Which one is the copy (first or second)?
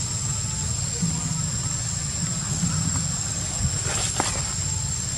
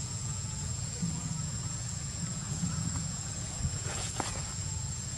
second